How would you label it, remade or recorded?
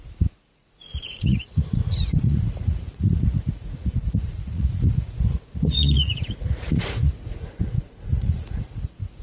remade